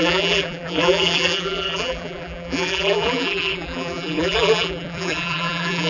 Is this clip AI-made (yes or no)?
yes